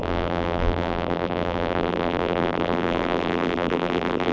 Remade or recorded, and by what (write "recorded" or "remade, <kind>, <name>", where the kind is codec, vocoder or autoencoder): remade, vocoder, BigVGAN v2